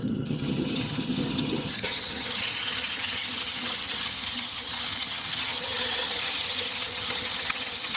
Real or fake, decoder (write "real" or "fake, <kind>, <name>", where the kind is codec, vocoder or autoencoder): fake, vocoder, HiFi-GAN